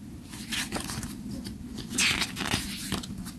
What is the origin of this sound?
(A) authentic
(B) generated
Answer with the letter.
A